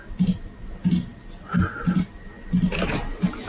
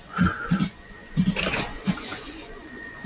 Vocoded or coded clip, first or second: second